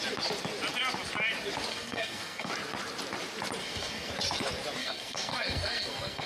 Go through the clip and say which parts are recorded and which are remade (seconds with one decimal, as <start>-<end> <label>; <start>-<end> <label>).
0.0-1.7 recorded; 1.7-2.5 remade; 2.5-3.6 recorded; 3.6-4.1 remade; 4.1-4.8 recorded; 4.8-6.3 remade